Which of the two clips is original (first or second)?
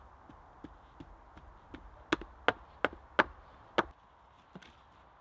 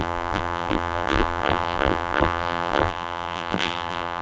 first